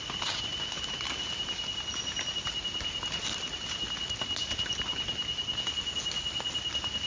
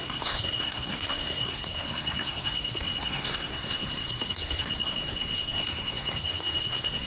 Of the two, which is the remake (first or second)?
second